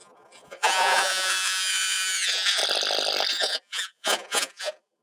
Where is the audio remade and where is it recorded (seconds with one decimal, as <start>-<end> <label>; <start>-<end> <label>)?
0.0-2.6 remade; 2.6-3.3 recorded; 3.3-5.0 remade